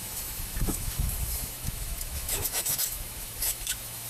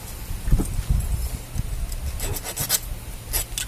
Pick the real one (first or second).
second